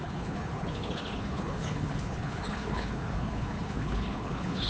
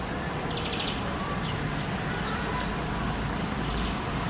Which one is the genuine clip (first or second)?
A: second